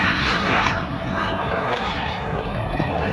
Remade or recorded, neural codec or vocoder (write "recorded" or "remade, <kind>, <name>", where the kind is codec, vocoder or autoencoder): remade, codec, SNAC